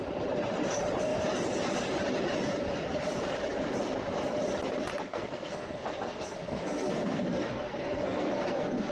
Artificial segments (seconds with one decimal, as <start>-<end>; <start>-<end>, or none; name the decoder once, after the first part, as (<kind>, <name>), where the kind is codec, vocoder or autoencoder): 4.9-8.9 (codec, SNAC)